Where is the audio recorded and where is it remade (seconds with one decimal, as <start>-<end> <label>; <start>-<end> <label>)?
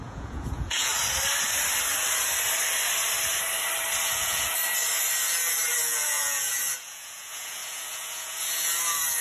0.0-0.9 remade; 0.9-4.0 recorded; 4.0-4.6 remade; 4.6-5.8 recorded; 5.8-9.2 remade